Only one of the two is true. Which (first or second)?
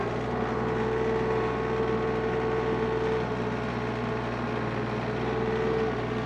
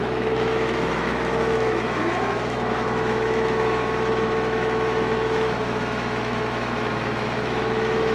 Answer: first